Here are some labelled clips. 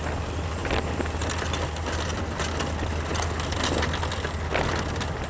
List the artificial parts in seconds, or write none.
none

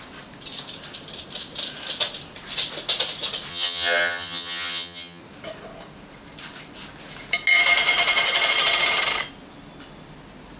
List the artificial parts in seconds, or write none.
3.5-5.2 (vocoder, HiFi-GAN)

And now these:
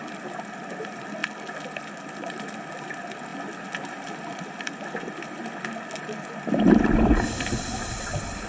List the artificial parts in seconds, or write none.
none